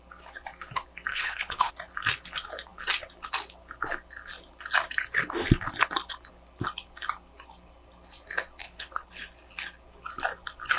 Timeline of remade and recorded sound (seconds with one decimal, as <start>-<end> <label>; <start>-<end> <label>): 0.0-1.1 recorded; 1.1-1.7 remade; 1.7-8.6 recorded; 8.6-9.1 remade; 9.1-10.8 recorded